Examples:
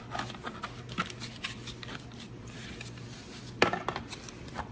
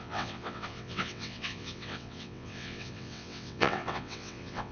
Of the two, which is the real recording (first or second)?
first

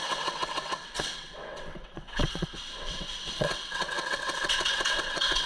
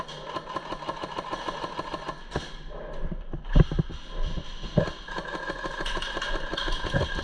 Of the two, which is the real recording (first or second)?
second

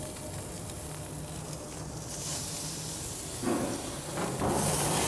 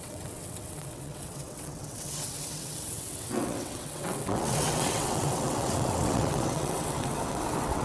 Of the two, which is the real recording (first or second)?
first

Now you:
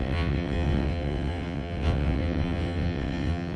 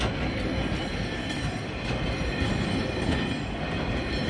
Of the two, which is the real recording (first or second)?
second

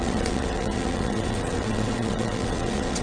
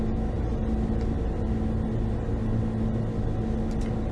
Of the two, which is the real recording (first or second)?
second